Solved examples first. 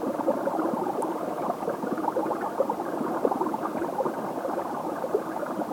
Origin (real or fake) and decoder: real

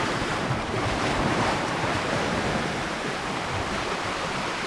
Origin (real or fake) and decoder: fake, vocoder, BigVGAN v2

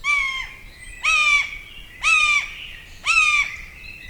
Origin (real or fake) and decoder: real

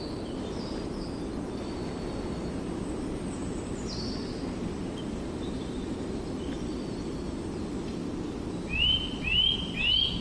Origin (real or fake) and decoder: real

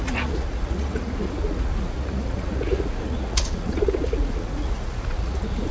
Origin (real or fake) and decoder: fake, vocoder, Vocos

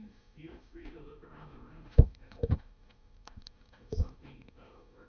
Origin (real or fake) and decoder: fake, autoencoder, DAC-VAE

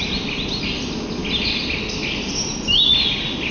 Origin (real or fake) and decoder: real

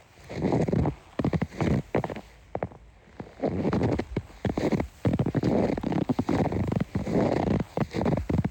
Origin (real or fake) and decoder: real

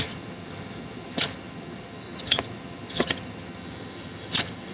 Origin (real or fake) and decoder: fake, vocoder, HiFi-GAN